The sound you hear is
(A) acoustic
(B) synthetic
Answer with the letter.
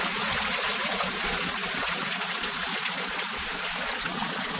B